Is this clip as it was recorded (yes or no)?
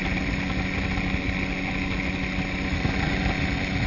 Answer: yes